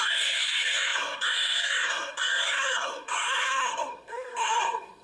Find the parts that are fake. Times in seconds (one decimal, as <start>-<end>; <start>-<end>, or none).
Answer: 0.0-5.0